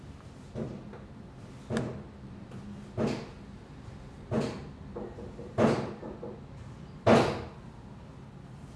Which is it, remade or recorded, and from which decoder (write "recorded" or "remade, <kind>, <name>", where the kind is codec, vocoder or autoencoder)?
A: recorded